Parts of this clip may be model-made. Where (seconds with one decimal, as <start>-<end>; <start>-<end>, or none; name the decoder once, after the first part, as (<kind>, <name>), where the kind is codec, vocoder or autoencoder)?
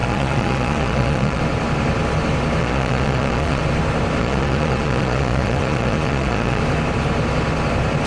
0.0-1.4 (vocoder, Vocos); 2.6-3.6; 4.2-6.6